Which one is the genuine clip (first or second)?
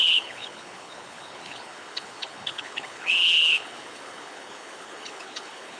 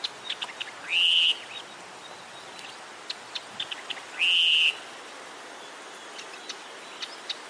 second